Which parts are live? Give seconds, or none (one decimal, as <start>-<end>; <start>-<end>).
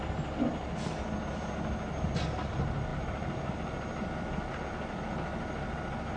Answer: 0.0-6.2